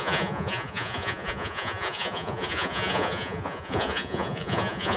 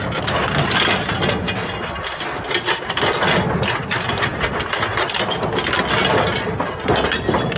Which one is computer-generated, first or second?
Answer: first